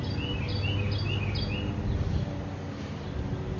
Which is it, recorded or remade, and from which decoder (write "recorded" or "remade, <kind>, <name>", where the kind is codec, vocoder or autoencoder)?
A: recorded